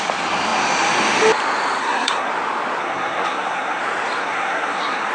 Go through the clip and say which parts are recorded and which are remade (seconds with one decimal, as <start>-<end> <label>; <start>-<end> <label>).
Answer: 0.0-1.8 recorded; 1.8-2.3 remade; 2.3-2.8 recorded; 2.8-3.8 remade; 3.8-4.2 recorded; 4.2-5.1 remade